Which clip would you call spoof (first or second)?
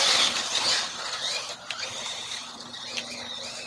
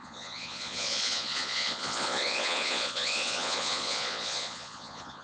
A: second